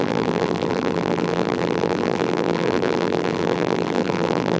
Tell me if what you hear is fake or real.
fake